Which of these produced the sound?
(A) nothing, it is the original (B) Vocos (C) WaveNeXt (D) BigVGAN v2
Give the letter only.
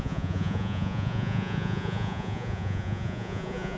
B